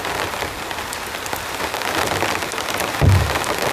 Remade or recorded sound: recorded